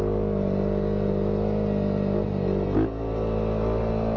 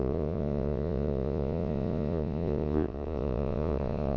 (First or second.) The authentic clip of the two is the first